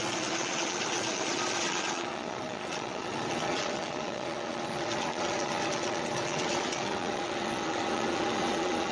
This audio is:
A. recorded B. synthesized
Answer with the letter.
B